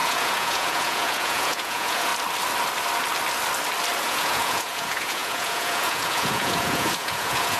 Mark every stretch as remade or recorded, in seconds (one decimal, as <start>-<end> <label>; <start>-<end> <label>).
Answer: 0.0-2.1 remade; 2.1-4.0 recorded; 4.0-7.6 remade